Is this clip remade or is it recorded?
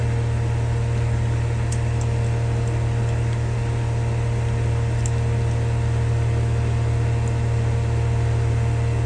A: recorded